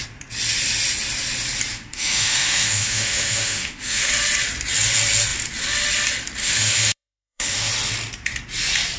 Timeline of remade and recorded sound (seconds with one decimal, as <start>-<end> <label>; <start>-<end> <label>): 0.0-1.7 recorded; 1.7-4.1 remade; 4.1-6.4 recorded; 6.4-7.7 remade; 7.7-9.0 recorded